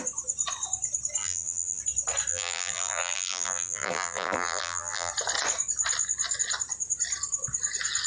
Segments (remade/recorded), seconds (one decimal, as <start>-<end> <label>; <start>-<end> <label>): 0.0-1.2 recorded; 1.2-1.8 remade; 1.8-2.3 recorded; 2.3-5.1 remade; 5.1-8.1 recorded